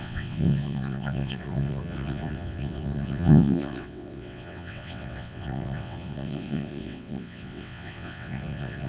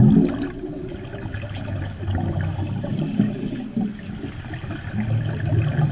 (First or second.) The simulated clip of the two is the first